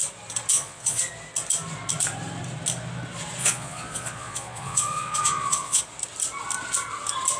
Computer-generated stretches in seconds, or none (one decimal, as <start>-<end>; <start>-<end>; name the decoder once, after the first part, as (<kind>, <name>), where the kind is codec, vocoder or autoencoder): 0.5-1.0 (vocoder, Vocos); 3.4-5.8